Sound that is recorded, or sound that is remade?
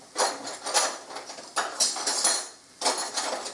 recorded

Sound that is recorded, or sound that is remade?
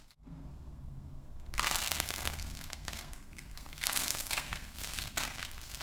remade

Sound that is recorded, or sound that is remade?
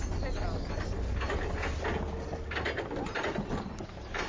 recorded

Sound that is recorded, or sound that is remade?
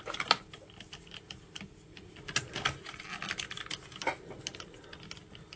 recorded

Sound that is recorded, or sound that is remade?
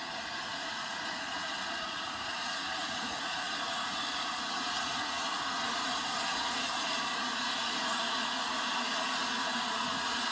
remade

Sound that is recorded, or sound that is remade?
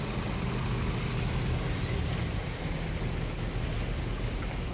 recorded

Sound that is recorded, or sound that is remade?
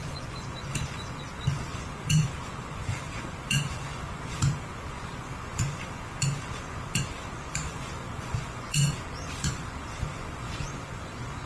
remade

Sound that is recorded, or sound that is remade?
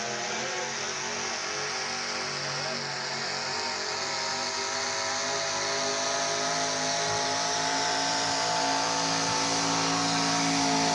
recorded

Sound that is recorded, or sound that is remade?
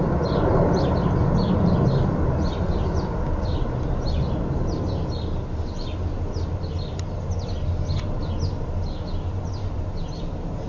recorded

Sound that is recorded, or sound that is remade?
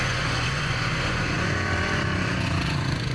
remade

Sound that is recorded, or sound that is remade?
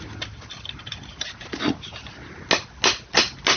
recorded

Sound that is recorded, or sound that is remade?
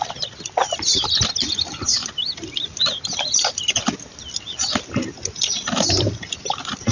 recorded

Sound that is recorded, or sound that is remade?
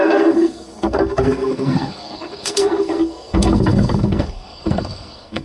remade